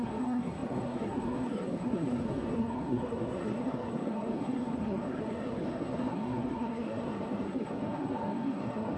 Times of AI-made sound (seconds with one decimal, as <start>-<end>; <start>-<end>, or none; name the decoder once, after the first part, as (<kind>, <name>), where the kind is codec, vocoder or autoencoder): 0.0-9.0 (codec, SNAC)